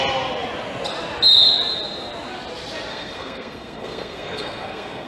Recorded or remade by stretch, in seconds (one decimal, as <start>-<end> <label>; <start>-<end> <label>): 0.0-2.9 recorded; 2.9-5.1 remade